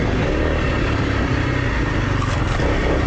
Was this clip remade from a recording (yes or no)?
no